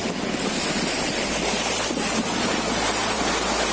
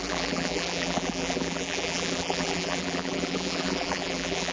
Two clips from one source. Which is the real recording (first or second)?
first